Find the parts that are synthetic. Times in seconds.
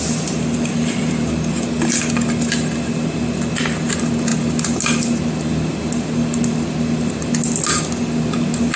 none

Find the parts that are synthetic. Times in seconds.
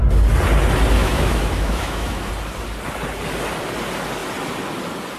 1.0-2.3 (autoencoder, DAC-VAE)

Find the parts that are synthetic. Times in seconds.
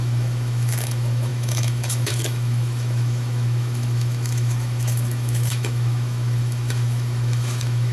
0.0-7.9 (autoencoder, DAC-VAE)